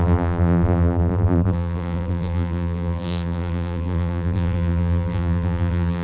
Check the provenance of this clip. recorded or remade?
remade